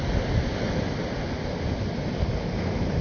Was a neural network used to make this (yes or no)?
no